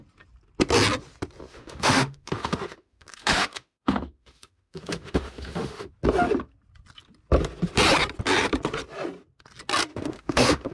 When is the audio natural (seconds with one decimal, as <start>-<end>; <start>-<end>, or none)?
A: 0.0-1.5; 5.9-9.9